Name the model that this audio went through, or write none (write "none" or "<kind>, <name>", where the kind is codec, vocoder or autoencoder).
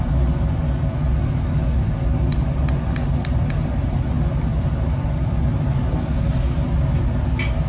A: none